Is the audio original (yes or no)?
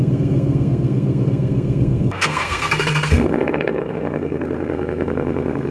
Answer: no